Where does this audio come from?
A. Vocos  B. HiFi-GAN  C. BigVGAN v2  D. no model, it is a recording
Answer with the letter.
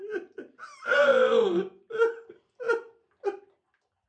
D